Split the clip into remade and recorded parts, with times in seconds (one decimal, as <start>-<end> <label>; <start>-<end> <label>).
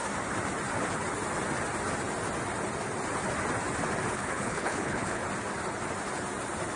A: 0.0-4.1 recorded; 4.1-5.2 remade; 5.2-6.8 recorded